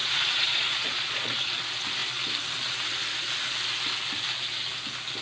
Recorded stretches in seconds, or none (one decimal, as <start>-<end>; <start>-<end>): 1.3-5.2